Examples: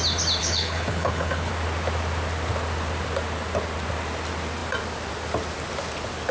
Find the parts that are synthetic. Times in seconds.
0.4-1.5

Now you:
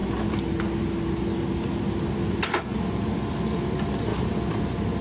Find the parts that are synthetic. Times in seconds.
none

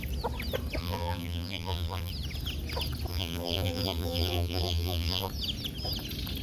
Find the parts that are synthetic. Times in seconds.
0.8-2.1; 3.1-5.3

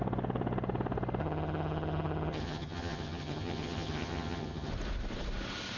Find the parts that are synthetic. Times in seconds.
1.2-4.7

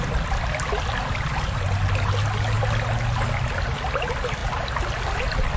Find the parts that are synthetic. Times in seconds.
none